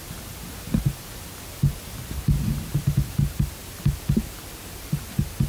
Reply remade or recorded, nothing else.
recorded